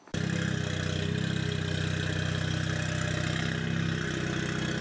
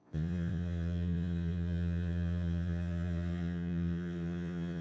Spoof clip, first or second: second